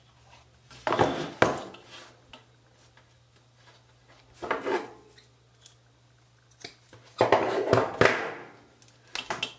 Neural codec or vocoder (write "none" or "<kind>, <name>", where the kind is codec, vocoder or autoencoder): none